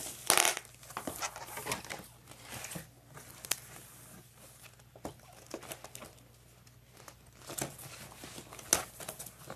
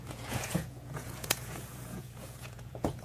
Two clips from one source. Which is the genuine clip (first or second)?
first